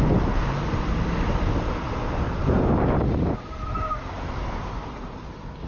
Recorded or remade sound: recorded